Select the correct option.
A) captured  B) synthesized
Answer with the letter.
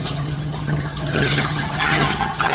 B